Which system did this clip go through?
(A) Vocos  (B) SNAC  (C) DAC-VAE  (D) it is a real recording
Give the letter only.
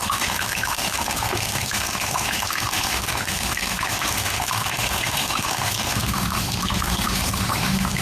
C